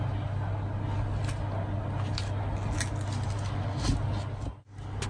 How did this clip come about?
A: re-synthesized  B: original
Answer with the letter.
B